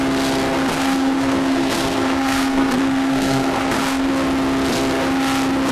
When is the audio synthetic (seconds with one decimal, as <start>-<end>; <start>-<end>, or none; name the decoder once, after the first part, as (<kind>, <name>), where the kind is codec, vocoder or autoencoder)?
0.7-4.1 (codec, SNAC)